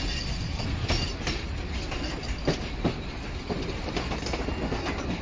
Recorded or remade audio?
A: recorded